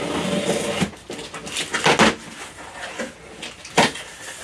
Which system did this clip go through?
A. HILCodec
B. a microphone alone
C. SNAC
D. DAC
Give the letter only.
B